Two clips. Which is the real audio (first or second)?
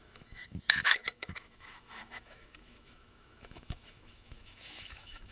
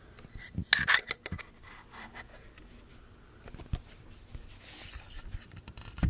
second